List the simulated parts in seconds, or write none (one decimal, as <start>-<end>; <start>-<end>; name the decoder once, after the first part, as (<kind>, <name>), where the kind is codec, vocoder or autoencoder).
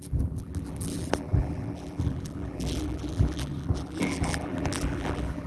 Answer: 0.0-5.5 (vocoder, BigVGAN v2)